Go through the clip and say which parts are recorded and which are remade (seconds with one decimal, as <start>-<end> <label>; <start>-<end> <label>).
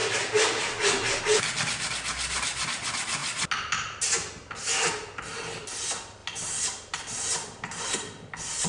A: 0.0-8.7 recorded